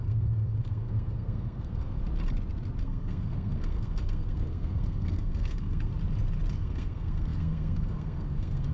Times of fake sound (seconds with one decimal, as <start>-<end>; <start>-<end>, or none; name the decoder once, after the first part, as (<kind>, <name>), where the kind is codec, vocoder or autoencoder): 0.0-2.0 (codec, SNAC); 2.8-5.9; 6.5-8.7